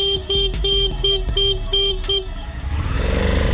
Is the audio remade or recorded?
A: remade